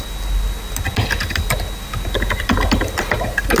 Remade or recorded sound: recorded